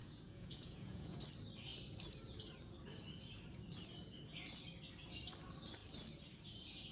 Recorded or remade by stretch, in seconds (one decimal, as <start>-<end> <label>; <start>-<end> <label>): 0.0-1.2 remade; 1.2-6.9 recorded